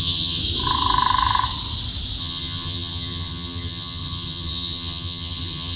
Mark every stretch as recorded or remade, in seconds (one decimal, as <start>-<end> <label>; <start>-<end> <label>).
0.0-0.4 remade; 0.4-2.2 recorded; 2.2-5.8 remade